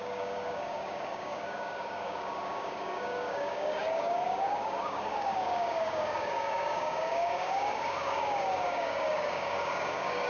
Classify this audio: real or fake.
fake